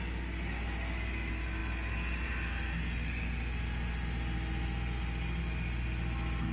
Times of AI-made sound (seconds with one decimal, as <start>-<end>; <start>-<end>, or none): none